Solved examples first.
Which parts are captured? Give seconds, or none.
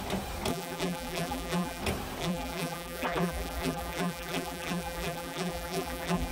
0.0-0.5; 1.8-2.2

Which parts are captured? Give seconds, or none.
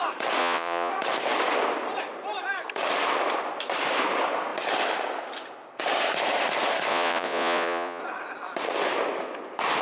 0.0-0.4; 0.9-6.9; 8.0-9.8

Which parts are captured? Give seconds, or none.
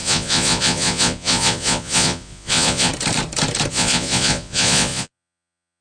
2.9-3.7